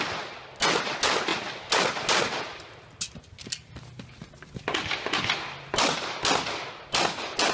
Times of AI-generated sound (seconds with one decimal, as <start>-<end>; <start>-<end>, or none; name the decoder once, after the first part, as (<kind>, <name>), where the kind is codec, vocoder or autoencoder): none